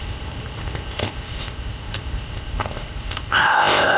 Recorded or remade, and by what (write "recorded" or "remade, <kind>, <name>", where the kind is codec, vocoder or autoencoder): remade, codec, ZipCodec